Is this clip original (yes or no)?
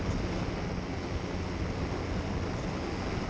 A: yes